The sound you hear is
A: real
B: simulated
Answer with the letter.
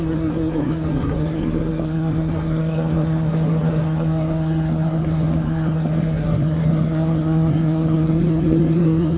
B